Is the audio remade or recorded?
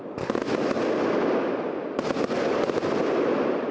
recorded